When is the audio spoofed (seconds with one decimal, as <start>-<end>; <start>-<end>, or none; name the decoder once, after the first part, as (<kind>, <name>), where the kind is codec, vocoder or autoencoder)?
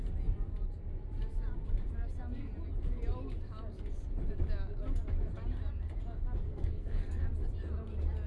6.5-7.2 (codec, SNAC)